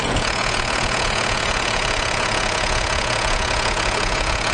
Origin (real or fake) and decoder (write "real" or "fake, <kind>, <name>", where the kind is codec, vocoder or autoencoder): fake, vocoder, Vocos